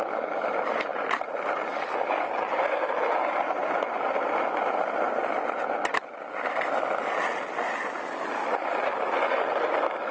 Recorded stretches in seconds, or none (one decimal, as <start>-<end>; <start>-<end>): 0.0-10.1

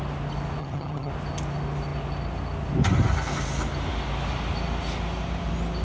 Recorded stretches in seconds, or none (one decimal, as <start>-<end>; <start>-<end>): 0.0-0.6; 1.1-5.8

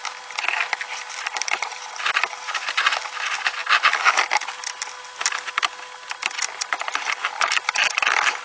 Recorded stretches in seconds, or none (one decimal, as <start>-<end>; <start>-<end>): 0.0-8.4

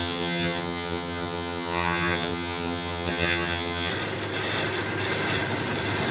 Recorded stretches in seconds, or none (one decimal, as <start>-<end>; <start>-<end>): 3.9-6.1

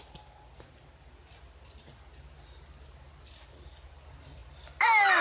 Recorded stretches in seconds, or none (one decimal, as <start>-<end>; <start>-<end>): 0.0-5.2

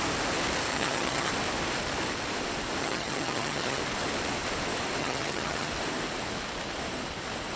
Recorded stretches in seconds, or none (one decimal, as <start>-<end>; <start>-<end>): 0.0-0.7; 1.3-2.8; 3.8-5.0; 5.7-7.6

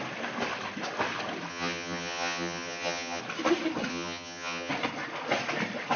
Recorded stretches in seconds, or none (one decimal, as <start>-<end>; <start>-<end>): 0.0-1.5; 3.2-3.9; 4.7-6.0

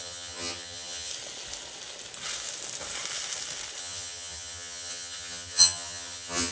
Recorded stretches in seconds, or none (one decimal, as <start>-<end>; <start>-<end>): 1.1-3.8